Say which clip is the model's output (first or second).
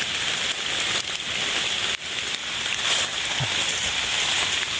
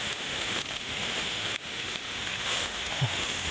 second